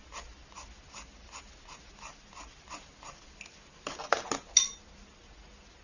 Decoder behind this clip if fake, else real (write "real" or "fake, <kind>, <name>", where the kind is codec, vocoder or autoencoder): real